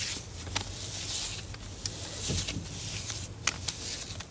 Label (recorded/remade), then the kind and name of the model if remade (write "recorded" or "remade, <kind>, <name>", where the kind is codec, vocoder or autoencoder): recorded